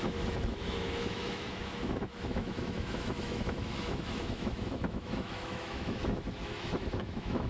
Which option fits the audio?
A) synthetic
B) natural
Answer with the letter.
A